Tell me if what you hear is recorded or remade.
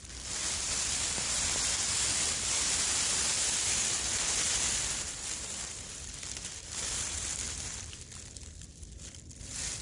remade